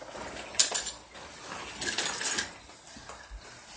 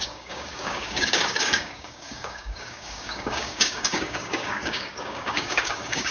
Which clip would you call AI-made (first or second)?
second